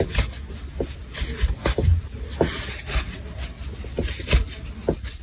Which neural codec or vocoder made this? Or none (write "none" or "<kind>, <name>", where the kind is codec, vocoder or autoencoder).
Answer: none